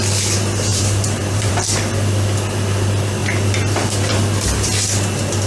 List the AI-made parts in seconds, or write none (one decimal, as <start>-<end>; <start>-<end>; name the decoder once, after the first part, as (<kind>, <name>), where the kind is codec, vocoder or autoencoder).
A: 0.7-1.5 (vocoder, BigVGAN v2)